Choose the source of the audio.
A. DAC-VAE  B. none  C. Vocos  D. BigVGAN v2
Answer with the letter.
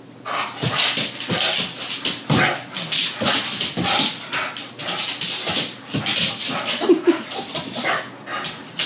B